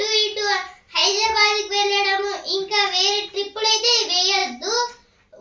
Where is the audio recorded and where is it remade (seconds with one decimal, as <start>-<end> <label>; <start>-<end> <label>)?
0.0-5.4 recorded